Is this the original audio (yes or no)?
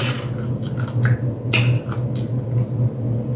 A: yes